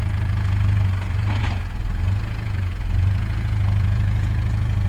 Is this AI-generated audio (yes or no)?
yes